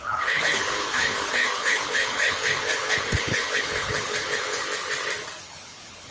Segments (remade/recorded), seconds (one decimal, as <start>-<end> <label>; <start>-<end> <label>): 0.0-4.6 remade; 4.6-5.4 recorded; 5.4-6.1 remade